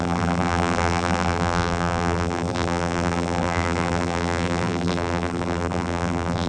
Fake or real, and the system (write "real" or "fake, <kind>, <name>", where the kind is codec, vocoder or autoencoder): fake, vocoder, BigVGAN v2